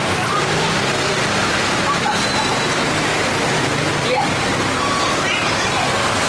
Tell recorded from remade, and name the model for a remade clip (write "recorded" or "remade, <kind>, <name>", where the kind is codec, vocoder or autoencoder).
recorded